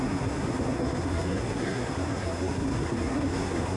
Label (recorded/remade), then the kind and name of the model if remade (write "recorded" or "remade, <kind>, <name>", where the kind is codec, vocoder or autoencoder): remade, codec, SNAC